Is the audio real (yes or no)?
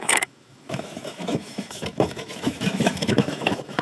no